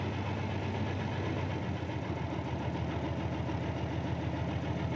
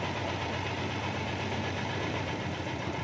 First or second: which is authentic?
first